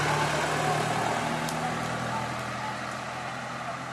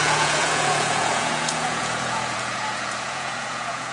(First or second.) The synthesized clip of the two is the second